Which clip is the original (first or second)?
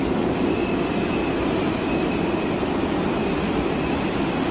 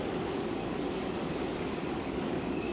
first